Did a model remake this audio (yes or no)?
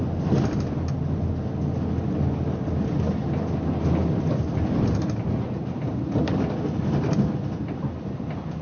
no